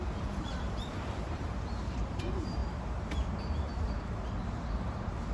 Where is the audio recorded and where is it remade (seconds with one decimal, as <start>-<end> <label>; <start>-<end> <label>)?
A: 0.0-0.9 recorded; 0.9-2.6 remade; 2.6-3.8 recorded; 3.8-5.3 remade